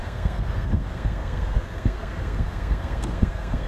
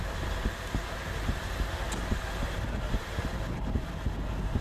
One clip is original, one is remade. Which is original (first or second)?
second